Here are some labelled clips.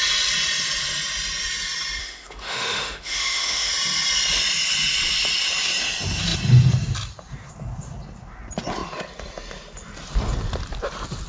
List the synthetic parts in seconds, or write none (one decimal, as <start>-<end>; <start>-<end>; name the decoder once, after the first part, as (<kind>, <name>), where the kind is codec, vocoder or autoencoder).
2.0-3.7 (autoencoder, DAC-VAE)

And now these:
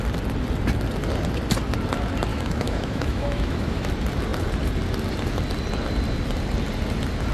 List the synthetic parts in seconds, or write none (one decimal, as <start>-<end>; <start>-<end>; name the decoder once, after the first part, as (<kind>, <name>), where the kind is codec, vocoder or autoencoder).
2.3-3.9 (autoencoder, DAC-VAE)

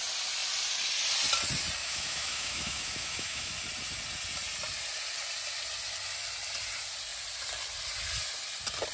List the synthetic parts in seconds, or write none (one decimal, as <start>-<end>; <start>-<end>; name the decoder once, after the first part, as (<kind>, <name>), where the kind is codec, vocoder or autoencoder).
1.8-3.5 (autoencoder, DAC-VAE)